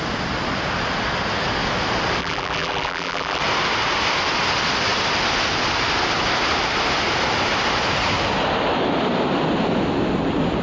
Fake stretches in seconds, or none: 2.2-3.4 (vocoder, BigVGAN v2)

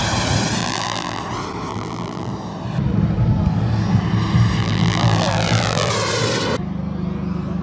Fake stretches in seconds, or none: 0.6-1.2 (vocoder, BigVGAN v2); 1.7-2.3; 4.6-5.9

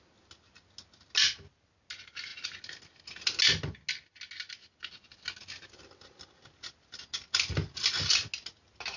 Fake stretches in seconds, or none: none

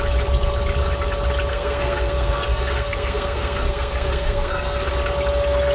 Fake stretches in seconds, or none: 1.5-4.9 (codec, SNAC)

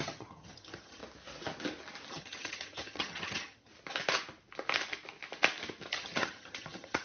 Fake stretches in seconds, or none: 0.0-1.0 (vocoder, HiFi-GAN); 2.1-3.7; 5.9-7.0

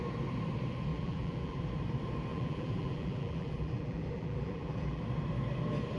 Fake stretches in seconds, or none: 0.9-1.6 (vocoder, BigVGAN v2); 2.3-5.0